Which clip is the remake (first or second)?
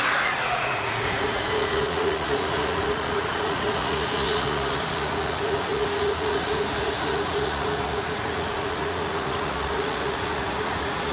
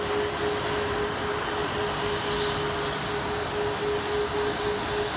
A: first